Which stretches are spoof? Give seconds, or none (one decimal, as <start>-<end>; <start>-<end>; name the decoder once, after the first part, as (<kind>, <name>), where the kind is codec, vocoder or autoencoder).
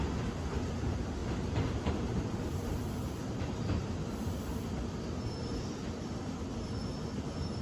1.2-3.6 (vocoder, BigVGAN v2)